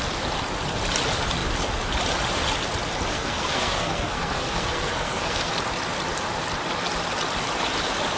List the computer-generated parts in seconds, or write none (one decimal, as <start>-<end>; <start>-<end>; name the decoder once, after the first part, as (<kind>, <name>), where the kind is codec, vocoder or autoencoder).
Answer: 3.1-5.5 (codec, SNAC)